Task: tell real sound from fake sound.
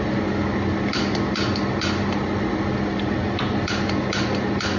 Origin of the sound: real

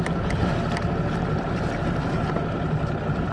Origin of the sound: real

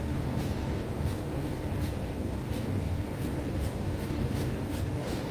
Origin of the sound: fake